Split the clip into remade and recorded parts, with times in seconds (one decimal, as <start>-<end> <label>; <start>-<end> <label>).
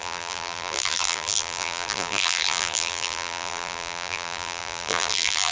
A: 0.0-5.5 remade